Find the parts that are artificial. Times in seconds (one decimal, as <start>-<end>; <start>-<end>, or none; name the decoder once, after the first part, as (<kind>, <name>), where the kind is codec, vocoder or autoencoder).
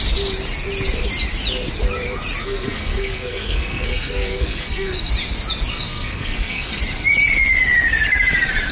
2.4-5.1 (codec, SNAC); 5.7-6.8